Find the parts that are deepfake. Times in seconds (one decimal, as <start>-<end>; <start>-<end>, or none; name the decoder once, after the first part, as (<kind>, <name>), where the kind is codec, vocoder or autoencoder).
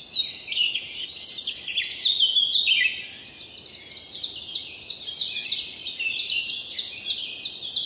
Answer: 5.8-6.4 (vocoder, BigVGAN v2)